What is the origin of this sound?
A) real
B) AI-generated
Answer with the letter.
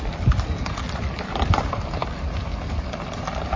A